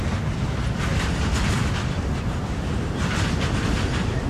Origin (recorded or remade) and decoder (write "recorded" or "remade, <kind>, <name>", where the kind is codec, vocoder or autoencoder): recorded